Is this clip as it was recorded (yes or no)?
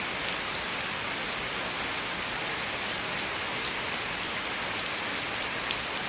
yes